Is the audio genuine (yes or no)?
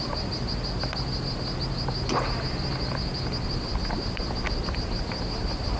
yes